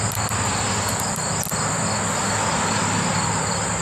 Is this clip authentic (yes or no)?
yes